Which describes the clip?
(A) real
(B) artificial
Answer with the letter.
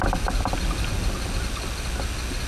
A